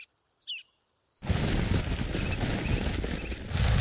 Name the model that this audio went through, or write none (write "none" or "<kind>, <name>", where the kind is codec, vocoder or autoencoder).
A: none